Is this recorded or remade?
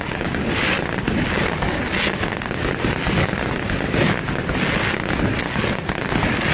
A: recorded